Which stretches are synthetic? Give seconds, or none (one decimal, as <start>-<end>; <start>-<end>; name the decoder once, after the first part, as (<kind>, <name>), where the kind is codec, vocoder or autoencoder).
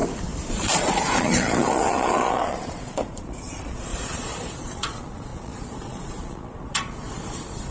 0.5-7.7 (vocoder, Vocos)